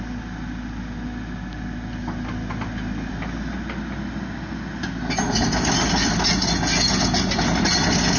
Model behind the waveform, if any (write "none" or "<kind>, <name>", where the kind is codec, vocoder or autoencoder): none